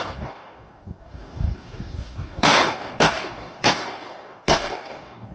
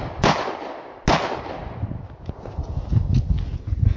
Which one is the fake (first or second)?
first